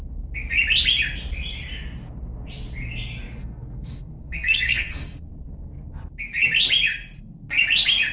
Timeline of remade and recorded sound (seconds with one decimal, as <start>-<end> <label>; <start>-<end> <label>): 0.0-3.4 recorded; 3.4-5.3 remade; 5.3-8.1 recorded